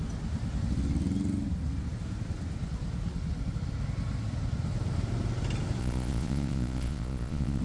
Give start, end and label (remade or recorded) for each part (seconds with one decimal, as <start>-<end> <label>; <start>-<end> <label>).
0.0-5.8 recorded; 5.8-7.6 remade